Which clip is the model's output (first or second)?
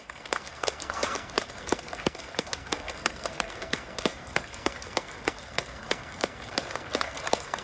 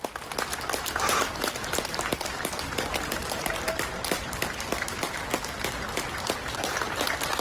first